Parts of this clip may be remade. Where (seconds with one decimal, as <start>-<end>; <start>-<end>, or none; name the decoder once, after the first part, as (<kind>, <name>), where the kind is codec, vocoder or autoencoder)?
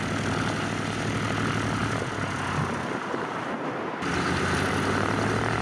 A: none